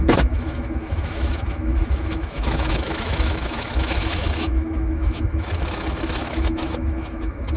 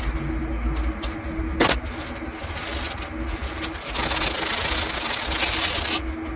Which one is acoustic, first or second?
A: second